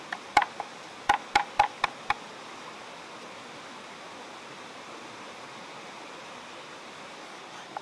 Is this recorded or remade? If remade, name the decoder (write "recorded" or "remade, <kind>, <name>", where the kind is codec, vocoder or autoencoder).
recorded